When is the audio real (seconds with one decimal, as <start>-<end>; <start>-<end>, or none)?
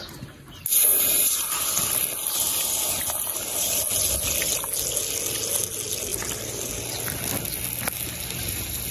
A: 0.0-0.9; 1.5-6.1; 6.7-8.9